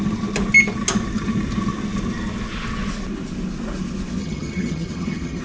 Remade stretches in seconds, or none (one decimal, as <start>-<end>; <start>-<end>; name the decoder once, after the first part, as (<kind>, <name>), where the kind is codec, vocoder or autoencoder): 4.2-5.4 (vocoder, HiFi-GAN)